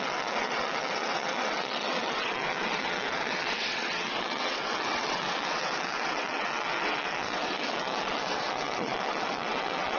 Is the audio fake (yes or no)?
yes